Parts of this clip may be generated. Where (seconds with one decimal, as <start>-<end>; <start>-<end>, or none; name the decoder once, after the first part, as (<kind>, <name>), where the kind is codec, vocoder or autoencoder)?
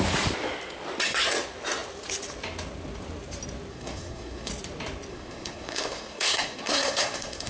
3.7-4.5 (codec, SNAC); 5.1-7.5